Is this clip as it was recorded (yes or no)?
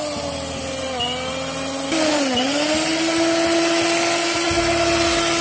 yes